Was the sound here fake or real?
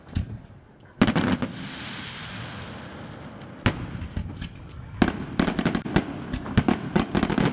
real